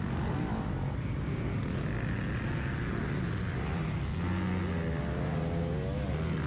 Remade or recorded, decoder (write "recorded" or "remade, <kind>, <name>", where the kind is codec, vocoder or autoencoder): recorded